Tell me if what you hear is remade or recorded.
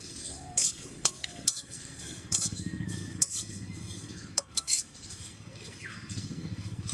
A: remade